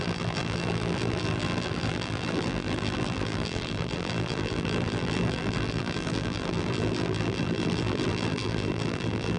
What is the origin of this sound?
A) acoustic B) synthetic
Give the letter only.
B